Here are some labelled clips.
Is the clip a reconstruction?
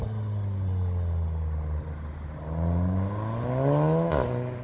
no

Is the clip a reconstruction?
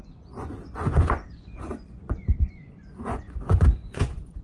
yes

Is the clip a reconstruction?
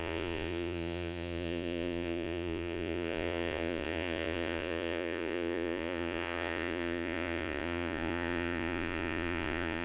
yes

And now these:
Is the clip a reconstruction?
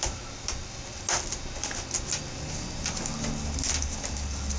no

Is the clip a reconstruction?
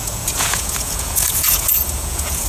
yes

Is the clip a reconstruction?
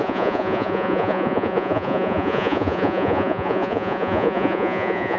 yes